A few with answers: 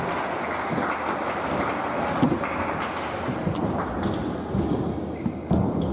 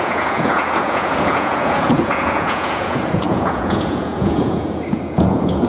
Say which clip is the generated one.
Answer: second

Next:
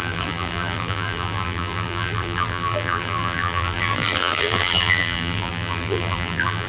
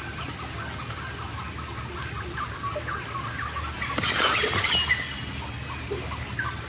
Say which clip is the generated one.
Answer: first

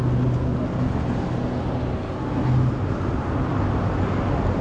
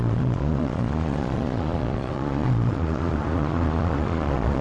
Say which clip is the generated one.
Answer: second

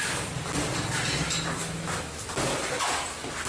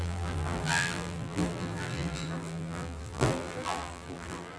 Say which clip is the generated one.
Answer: second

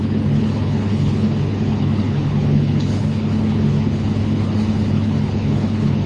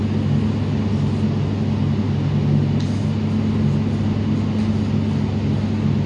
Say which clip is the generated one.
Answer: first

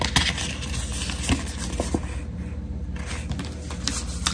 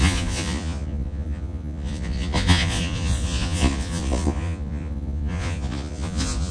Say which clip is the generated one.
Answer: second